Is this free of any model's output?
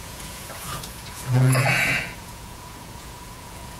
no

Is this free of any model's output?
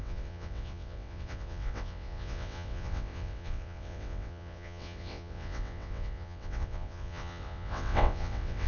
no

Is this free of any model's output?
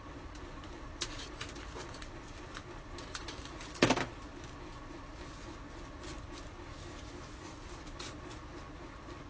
yes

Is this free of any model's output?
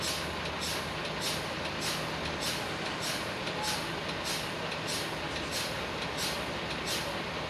yes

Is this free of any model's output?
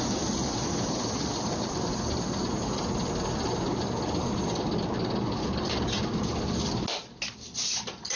yes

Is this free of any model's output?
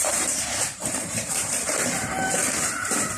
no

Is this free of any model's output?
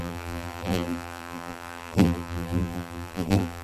no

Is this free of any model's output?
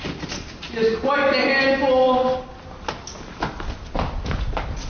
yes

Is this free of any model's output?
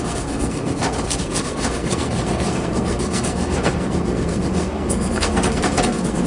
no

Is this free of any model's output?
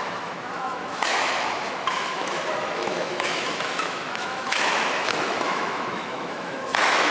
no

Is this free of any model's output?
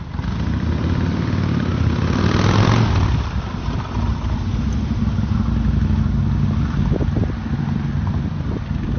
yes